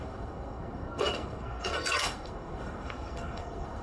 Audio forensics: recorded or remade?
remade